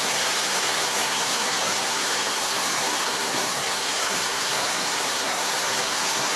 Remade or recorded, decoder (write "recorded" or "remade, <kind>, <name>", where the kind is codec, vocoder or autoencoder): remade, codec, SNAC